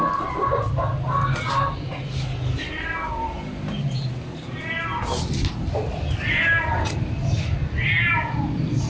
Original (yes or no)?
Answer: yes